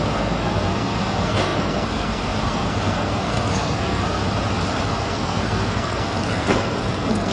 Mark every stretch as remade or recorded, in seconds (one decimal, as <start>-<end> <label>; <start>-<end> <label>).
0.0-4.2 remade; 4.2-4.8 recorded; 4.8-7.3 remade